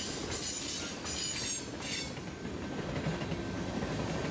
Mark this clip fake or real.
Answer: real